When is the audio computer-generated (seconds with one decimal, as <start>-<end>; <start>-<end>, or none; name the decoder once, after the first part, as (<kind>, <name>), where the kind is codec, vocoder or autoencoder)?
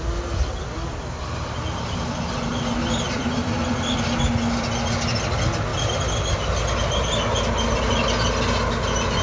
2.5-3.3 (vocoder, BigVGAN v2)